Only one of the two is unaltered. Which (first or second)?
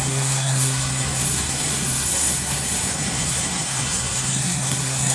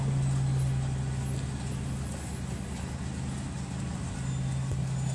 second